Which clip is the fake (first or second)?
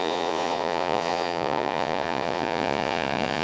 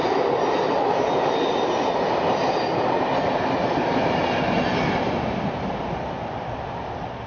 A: first